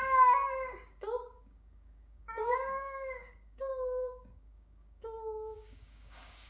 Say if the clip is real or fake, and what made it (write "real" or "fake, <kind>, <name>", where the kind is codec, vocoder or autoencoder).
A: fake, codec, DAC